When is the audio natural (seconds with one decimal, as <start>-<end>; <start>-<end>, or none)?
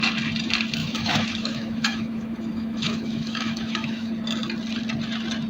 0.0-0.8; 4.1-5.5